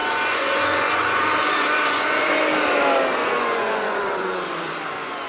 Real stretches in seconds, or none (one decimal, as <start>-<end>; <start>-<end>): 2.4-3.2